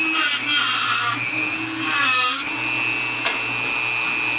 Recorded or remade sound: recorded